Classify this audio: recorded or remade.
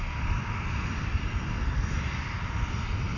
recorded